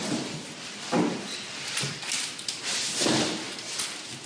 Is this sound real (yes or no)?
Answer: yes